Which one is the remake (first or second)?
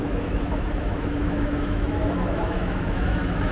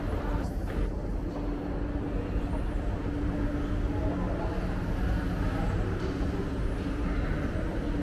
first